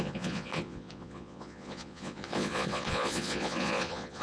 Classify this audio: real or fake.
fake